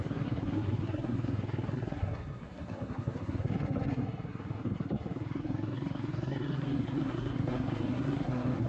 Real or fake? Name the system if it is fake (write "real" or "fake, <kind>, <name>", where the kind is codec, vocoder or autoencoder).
fake, codec, SNAC